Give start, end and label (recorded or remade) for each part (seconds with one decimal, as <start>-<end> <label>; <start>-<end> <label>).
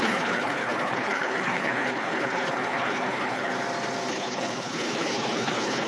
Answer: 0.0-3.5 remade; 3.5-4.1 recorded; 4.1-5.9 remade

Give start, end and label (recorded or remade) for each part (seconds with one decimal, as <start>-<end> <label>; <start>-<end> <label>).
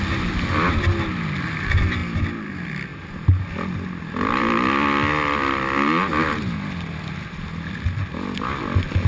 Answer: 0.0-9.1 recorded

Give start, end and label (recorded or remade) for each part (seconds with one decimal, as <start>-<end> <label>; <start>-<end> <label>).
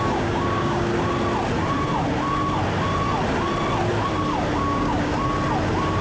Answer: 0.0-0.9 remade; 0.9-4.5 recorded; 4.5-5.1 remade; 5.1-6.0 recorded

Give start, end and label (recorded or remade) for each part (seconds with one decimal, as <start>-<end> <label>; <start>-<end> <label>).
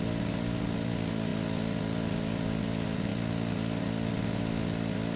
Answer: 0.0-5.2 recorded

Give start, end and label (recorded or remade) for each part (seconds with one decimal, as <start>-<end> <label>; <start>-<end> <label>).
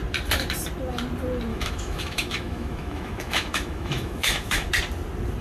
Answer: 0.0-1.5 recorded; 1.5-4.7 remade; 4.7-5.4 recorded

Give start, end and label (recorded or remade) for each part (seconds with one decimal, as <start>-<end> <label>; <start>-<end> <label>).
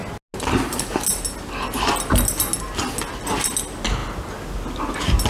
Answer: 0.0-5.3 recorded